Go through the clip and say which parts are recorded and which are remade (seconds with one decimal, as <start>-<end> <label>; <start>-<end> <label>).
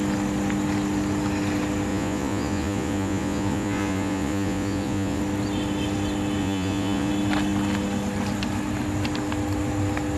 0.0-1.9 recorded; 1.9-5.2 remade; 5.2-6.4 recorded; 6.4-7.1 remade; 7.1-10.2 recorded